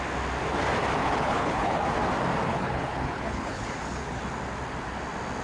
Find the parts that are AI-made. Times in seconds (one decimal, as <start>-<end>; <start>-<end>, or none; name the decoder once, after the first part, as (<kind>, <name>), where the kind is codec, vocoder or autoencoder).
1.0-1.8 (codec, HILCodec); 2.5-4.2